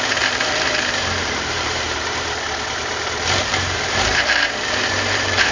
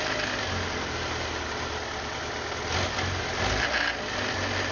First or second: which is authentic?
second